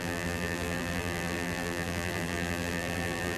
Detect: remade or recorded remade